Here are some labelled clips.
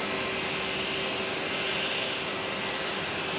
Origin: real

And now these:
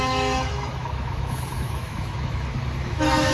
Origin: fake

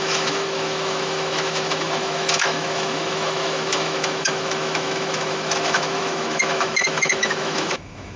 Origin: fake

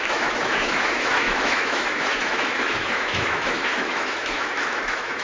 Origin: fake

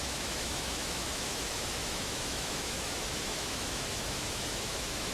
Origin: fake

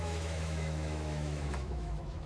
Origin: fake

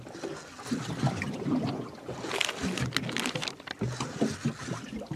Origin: real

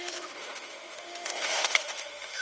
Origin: fake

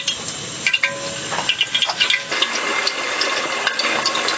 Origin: real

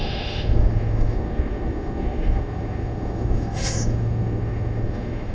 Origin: fake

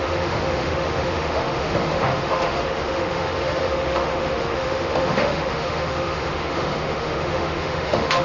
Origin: fake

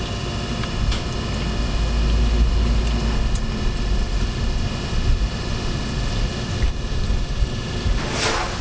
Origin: real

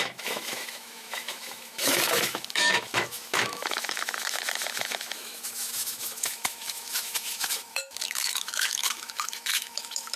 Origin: fake